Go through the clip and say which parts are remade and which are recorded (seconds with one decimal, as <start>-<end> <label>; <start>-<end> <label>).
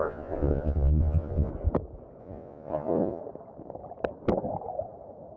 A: 0.0-1.5 remade; 1.5-2.2 recorded; 2.2-3.2 remade; 3.2-5.4 recorded